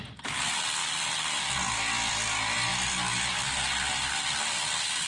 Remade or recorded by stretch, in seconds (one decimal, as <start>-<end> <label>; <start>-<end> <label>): 0.0-0.8 recorded; 0.8-1.5 remade; 1.5-5.1 recorded